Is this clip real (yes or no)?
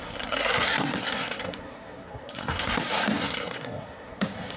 no